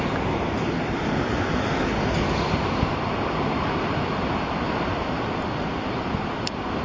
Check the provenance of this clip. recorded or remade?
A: recorded